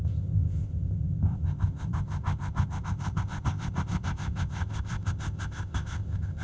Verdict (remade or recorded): remade